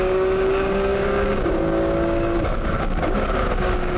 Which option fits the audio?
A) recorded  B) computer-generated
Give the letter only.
B